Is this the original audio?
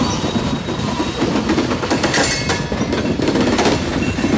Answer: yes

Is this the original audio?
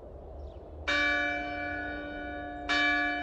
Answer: yes